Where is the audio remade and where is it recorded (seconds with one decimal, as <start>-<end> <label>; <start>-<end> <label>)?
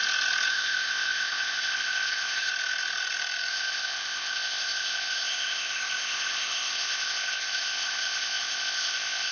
0.0-0.5 recorded; 0.5-2.5 remade; 2.5-3.5 recorded; 3.5-9.3 remade